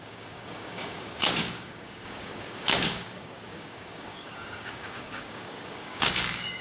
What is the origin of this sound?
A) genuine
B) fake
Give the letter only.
B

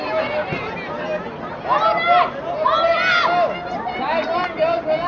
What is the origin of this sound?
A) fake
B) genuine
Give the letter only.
B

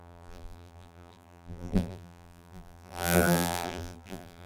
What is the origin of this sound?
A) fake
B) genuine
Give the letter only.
A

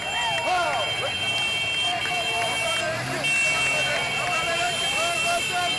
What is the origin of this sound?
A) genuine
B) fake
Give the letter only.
A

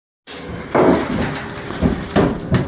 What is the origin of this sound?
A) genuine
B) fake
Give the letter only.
A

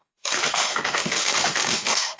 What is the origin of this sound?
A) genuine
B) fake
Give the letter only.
B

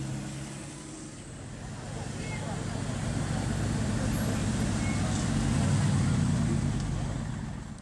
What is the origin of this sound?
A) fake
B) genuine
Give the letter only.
B